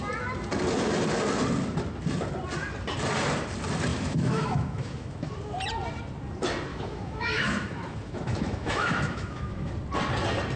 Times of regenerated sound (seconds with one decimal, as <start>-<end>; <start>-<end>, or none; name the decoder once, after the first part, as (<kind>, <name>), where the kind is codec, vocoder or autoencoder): 3.9-5.3 (autoencoder, DAC-VAE); 6.7-9.7